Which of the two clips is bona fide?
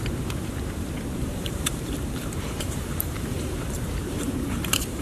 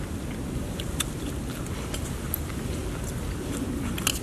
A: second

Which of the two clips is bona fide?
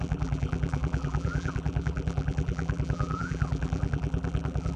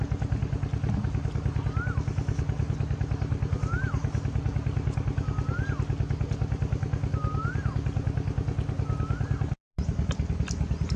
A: second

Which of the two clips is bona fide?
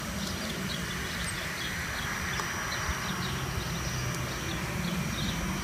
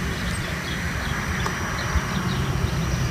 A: first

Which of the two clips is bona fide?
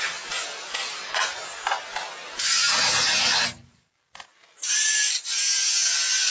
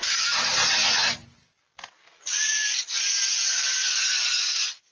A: first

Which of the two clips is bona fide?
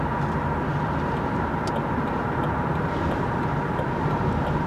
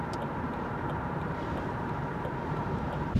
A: first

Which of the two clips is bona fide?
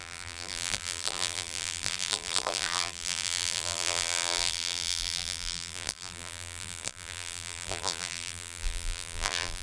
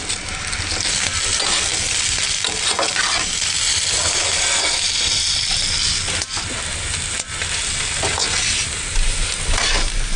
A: second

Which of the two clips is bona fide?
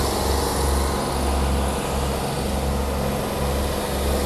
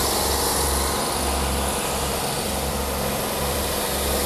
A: first